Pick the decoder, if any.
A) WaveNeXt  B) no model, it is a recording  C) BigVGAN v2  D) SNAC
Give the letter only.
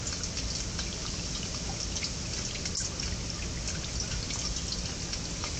B